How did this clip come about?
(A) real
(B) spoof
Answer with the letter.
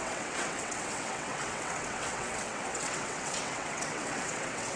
B